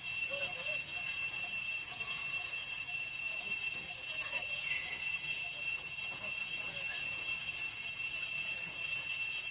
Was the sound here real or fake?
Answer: fake